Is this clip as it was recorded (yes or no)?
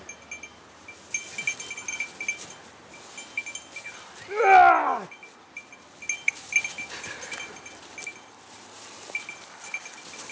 yes